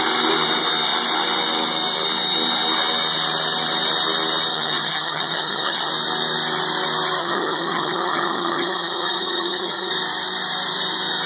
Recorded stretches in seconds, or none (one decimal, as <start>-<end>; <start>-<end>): 0.0-4.5; 5.9-7.2; 9.9-11.3